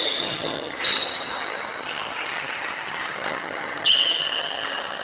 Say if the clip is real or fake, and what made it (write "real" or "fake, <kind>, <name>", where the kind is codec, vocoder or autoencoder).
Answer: fake, vocoder, HiFi-GAN